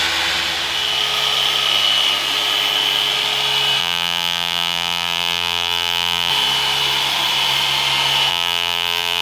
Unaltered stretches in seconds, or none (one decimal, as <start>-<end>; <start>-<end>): 0.0-3.8; 6.3-8.3